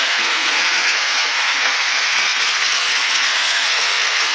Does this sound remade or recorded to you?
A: remade